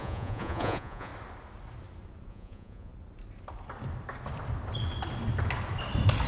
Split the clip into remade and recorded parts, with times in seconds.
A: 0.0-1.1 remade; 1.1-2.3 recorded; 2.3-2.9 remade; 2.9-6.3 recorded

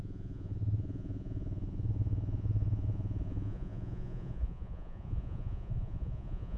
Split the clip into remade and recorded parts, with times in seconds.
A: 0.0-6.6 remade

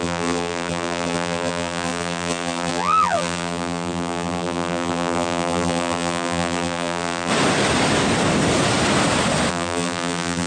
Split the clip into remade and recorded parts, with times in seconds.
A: 0.0-7.3 remade; 7.3-9.5 recorded; 9.5-10.5 remade

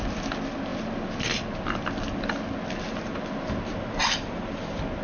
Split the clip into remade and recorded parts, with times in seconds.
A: 0.0-5.0 recorded

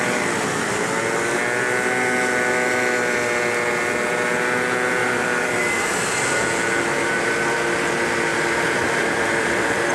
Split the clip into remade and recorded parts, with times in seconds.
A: 0.0-5.0 recorded; 5.0-6.2 remade; 6.2-8.3 recorded; 8.3-9.9 remade

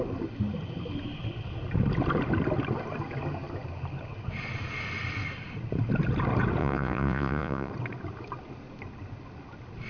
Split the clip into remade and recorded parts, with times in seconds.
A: 0.0-6.6 recorded; 6.6-7.7 remade; 7.7-9.9 recorded

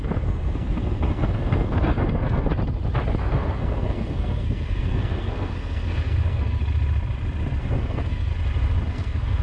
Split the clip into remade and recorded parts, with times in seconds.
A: 0.0-2.5 remade; 2.5-3.2 recorded; 3.2-6.6 remade; 6.6-7.6 recorded; 7.6-8.3 remade; 8.3-8.9 recorded; 8.9-9.4 remade